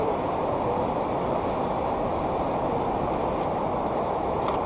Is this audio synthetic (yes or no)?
no